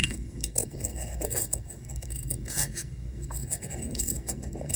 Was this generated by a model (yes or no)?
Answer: yes